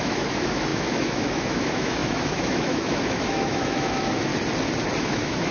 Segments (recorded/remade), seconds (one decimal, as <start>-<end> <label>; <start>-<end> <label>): 0.0-4.3 remade; 4.3-5.0 recorded; 5.0-5.5 remade